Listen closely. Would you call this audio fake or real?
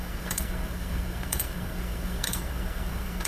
fake